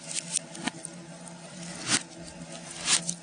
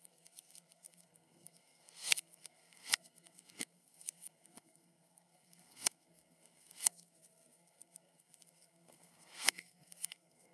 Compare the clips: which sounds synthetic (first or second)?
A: second